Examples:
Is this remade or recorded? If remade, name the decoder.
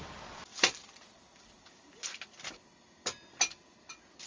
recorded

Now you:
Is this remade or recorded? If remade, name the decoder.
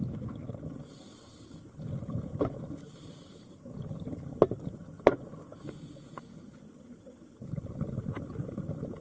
recorded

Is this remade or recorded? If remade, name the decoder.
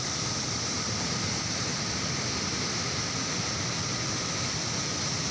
recorded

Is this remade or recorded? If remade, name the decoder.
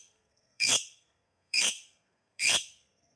remade, codec, SNAC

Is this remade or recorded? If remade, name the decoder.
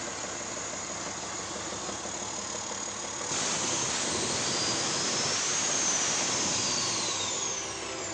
recorded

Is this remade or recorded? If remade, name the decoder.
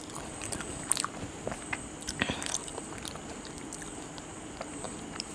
remade, vocoder, BigVGAN v2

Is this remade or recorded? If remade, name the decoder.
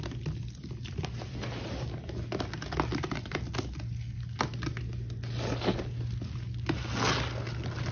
recorded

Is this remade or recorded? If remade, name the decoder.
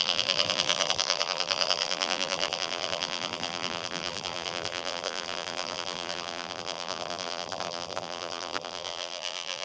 remade, vocoder, BigVGAN v2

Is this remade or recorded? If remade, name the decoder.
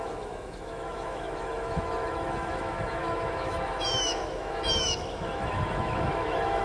remade, autoencoder, DAC-VAE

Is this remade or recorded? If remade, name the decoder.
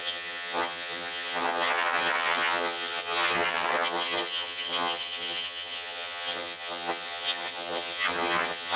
remade, vocoder, HiFi-GAN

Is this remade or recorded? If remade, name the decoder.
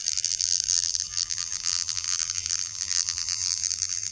remade, vocoder, BigVGAN v2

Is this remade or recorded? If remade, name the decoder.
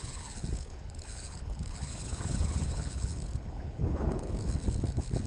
remade, codec, HILCodec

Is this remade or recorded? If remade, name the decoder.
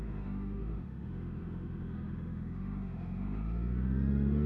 remade, autoencoder, DAC-VAE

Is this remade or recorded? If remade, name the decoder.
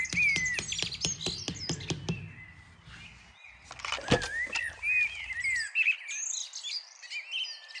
recorded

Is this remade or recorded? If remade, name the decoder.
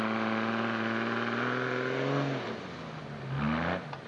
recorded